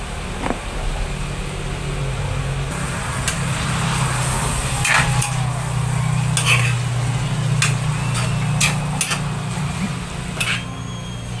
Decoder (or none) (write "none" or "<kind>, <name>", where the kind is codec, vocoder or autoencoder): none